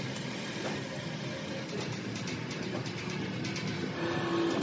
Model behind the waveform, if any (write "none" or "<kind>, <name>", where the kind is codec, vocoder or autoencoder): none